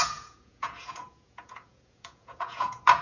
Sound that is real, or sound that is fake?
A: fake